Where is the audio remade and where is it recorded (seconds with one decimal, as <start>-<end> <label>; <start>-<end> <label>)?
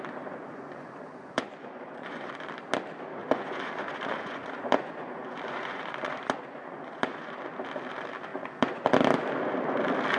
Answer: 0.0-0.5 recorded; 0.5-2.3 remade; 2.3-3.2 recorded; 3.2-7.4 remade; 7.4-8.3 recorded; 8.3-8.8 remade; 8.8-10.2 recorded